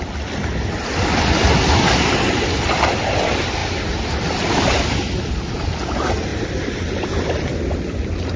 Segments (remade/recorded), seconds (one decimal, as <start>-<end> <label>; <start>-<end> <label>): 0.0-8.4 recorded